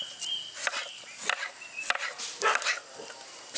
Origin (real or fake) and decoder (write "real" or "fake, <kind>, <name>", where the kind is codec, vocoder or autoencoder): real